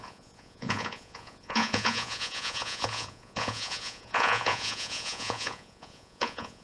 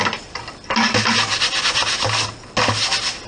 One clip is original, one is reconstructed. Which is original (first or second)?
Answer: second